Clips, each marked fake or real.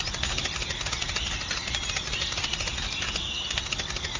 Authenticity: real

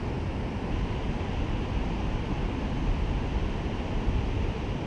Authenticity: real